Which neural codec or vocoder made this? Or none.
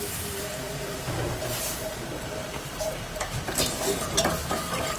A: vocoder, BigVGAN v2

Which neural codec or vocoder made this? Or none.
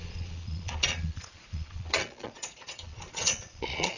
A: vocoder, Vocos